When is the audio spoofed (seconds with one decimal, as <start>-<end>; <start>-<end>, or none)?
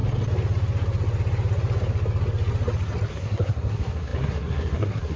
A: 3.1-5.2